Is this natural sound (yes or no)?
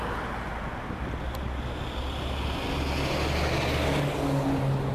yes